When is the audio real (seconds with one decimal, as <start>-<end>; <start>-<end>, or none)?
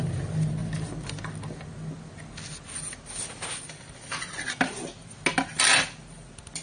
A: 0.0-6.6